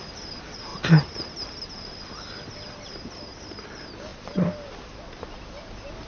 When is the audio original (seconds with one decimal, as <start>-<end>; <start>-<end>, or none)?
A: 0.0-6.1